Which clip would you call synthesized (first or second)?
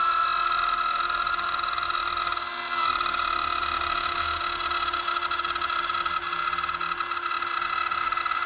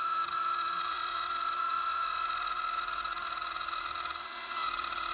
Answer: second